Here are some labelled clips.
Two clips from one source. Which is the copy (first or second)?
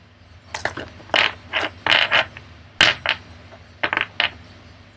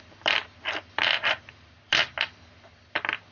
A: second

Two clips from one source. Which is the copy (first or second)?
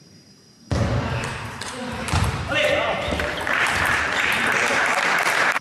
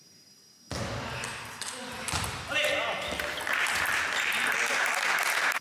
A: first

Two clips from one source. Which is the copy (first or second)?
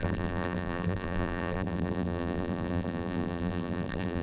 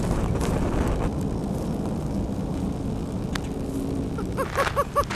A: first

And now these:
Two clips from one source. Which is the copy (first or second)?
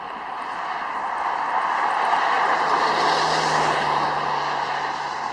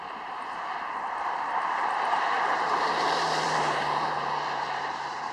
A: second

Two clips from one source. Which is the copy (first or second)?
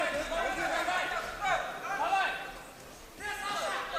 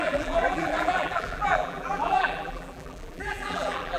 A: second